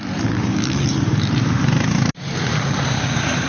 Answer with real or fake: fake